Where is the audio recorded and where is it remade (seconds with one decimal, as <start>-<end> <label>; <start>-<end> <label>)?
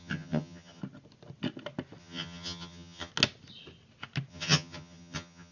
0.0-0.8 remade; 0.8-2.0 recorded; 2.0-3.1 remade; 3.1-4.3 recorded; 4.3-5.5 remade